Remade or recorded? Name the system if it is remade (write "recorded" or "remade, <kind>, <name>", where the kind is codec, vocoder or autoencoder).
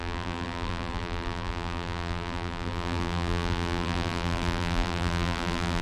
remade, vocoder, BigVGAN v2